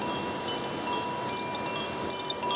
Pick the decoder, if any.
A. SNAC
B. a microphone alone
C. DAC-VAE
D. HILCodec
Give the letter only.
B